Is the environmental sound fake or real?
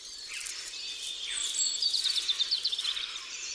real